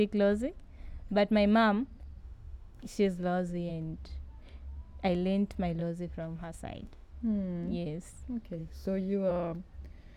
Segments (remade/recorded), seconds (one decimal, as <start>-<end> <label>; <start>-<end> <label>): 0.0-2.2 recorded; 2.2-3.7 remade; 3.7-5.8 recorded; 5.8-7.1 remade; 7.1-8.6 recorded; 8.6-9.3 remade; 9.3-10.2 recorded